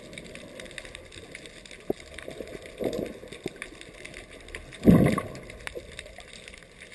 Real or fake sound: real